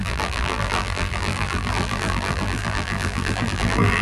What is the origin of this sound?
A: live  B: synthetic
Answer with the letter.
B